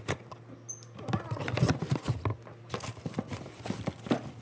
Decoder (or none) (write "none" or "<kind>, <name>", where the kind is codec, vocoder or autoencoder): none